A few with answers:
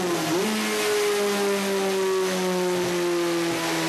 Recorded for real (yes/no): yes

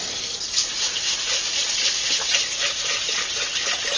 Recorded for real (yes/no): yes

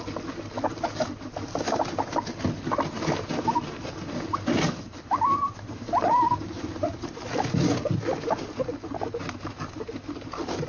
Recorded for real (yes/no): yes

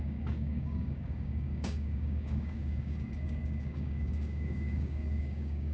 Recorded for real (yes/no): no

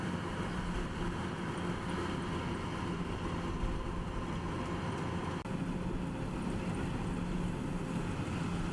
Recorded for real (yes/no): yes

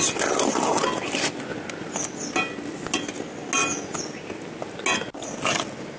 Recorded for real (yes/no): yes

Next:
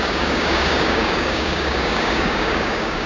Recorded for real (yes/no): no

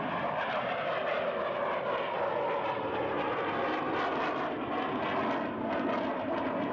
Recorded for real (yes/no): yes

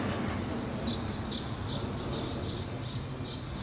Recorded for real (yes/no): yes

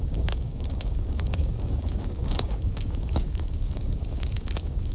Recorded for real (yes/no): no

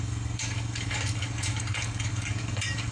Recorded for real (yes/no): no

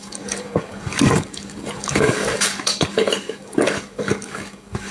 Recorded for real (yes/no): no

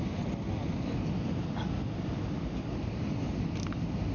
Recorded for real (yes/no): yes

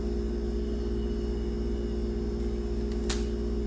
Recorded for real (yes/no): yes